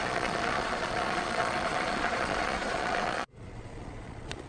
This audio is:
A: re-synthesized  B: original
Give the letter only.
A